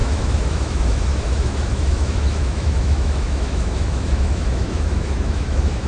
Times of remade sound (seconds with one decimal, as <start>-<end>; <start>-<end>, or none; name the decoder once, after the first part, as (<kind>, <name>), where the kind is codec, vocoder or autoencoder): 0.0-5.9 (autoencoder, DAC-VAE)